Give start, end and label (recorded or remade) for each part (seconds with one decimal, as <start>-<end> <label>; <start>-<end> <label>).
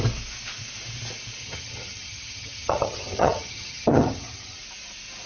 0.0-1.4 recorded; 1.4-4.6 remade; 4.6-5.3 recorded